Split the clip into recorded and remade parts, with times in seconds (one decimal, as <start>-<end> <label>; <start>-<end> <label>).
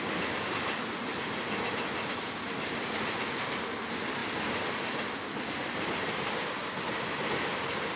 0.0-8.0 recorded